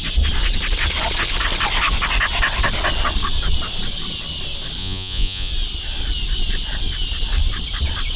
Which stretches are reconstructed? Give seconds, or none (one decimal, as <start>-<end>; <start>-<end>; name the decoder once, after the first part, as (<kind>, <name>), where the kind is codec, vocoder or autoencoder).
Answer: 4.8-5.5 (vocoder, Vocos)